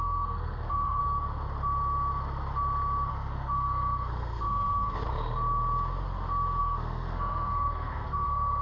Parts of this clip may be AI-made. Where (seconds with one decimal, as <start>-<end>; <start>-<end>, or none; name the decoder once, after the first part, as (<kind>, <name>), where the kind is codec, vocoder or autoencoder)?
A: 0.0-1.0 (codec, SNAC); 3.1-5.0; 6.6-8.6